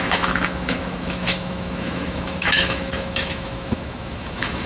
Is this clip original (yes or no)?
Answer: no